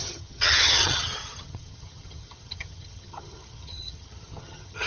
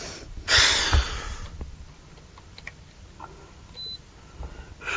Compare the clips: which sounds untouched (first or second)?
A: second